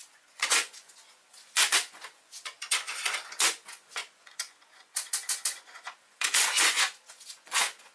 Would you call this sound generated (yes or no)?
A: yes